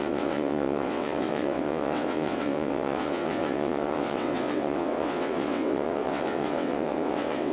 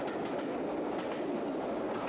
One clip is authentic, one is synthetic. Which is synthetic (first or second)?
first